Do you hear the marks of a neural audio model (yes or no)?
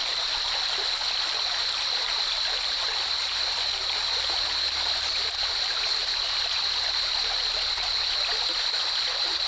no